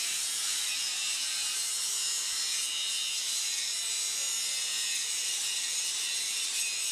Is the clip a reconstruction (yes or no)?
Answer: yes